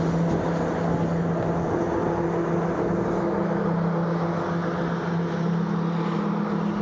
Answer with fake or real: real